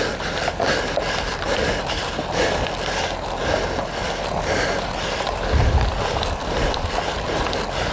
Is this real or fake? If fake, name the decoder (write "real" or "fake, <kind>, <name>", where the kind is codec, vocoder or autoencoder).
real